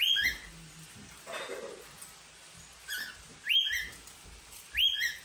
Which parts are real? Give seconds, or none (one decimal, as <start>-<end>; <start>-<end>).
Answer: 0.0-5.2